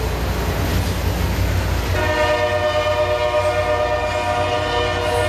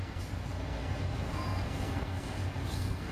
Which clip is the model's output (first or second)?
second